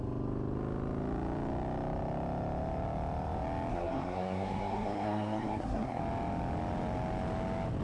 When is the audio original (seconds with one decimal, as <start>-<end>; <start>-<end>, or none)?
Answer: 0.0-3.7; 6.0-7.8